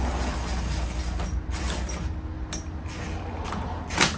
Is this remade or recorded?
recorded